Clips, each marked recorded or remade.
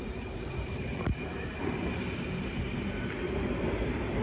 remade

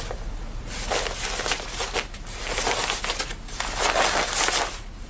recorded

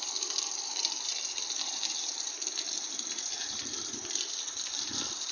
remade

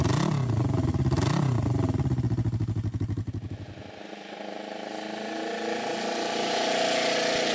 recorded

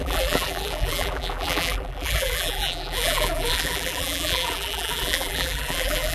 remade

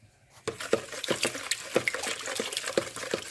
recorded